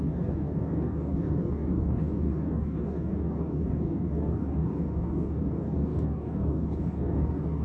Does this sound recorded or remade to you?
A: remade